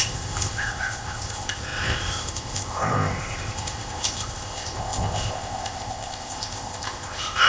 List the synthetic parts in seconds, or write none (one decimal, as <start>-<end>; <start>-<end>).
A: 0.0-7.5